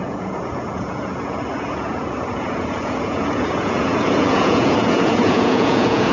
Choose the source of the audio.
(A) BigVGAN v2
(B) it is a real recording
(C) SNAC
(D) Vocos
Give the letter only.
D